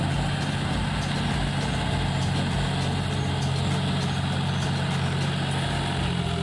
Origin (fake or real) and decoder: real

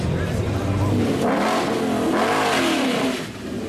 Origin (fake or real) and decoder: real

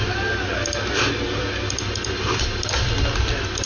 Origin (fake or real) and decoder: real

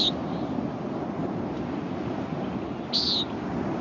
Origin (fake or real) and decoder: real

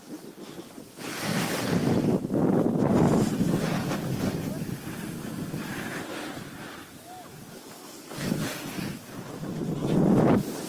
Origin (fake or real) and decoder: real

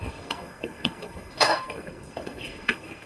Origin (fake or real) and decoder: fake, codec, SNAC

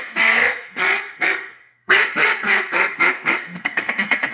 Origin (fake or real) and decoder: fake, codec, SNAC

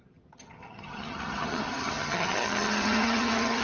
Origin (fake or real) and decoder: fake, vocoder, HiFi-GAN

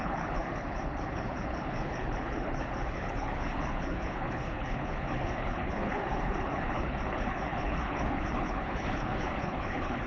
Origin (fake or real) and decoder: fake, codec, HILCodec